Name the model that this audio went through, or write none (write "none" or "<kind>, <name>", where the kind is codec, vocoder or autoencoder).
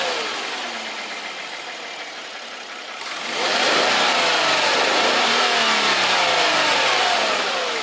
none